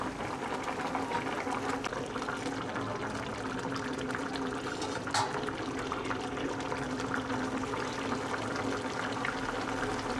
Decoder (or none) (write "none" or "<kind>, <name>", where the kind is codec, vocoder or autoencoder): none